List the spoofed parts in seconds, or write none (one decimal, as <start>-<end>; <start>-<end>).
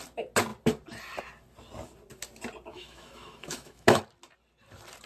2.7-4.0